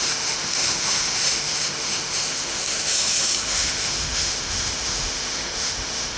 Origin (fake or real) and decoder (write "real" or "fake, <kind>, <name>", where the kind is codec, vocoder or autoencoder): fake, autoencoder, DAC-VAE